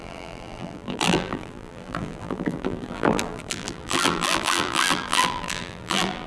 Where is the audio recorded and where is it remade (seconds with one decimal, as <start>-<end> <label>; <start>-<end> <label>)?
0.0-6.3 remade